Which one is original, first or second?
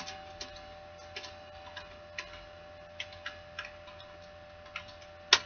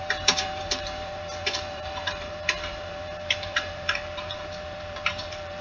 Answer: first